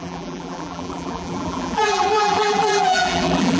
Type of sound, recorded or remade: remade